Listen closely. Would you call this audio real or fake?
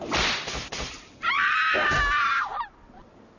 real